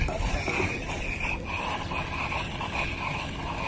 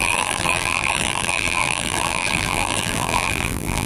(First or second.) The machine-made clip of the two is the second